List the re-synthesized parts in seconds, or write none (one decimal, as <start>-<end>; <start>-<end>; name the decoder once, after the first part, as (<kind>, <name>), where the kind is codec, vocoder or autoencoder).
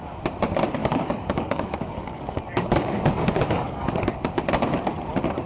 0.8-4.1 (codec, DAC)